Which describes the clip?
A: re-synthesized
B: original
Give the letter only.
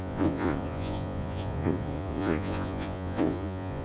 A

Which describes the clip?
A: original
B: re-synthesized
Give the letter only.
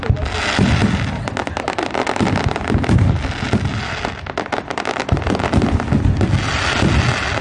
A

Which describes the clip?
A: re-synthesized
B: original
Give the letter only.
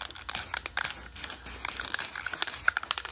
B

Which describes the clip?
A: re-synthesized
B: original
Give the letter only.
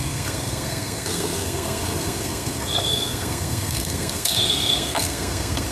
A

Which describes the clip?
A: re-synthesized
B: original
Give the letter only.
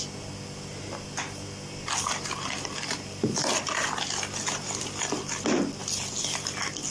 B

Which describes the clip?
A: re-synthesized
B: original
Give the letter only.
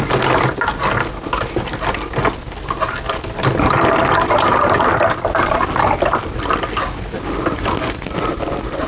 B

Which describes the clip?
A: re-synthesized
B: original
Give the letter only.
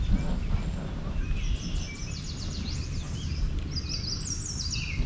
B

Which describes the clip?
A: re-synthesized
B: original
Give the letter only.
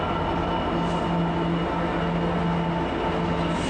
B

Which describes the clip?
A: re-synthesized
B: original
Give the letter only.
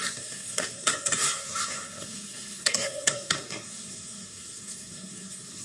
A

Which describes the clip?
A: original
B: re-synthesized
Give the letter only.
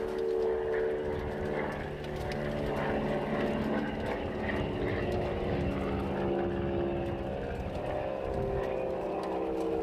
A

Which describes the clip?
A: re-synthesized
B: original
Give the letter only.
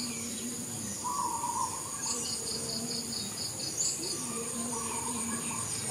A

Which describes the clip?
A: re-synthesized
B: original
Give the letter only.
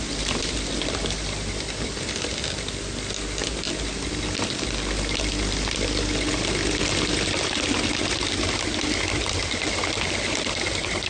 B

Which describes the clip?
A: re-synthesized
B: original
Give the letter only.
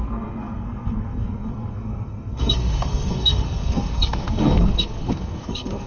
A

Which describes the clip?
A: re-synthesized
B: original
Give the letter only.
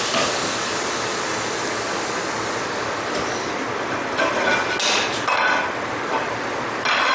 B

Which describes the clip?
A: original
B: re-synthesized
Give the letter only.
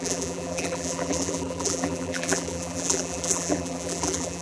B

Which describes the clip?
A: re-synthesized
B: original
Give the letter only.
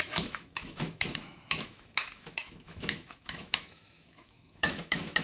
A